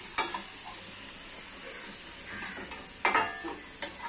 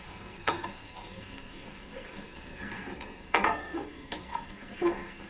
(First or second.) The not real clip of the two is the second